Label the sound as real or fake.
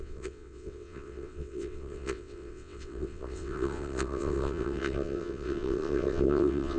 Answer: fake